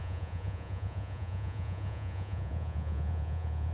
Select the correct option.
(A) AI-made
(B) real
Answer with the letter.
A